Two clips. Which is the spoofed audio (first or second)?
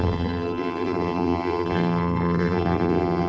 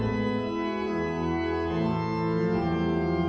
first